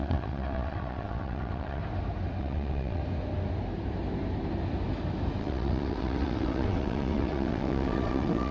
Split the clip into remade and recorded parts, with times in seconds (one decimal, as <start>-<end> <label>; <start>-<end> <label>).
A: 0.0-1.8 remade; 1.8-2.4 recorded; 2.4-3.0 remade; 3.0-5.4 recorded; 5.4-8.5 remade